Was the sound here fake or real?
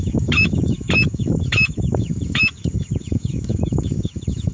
fake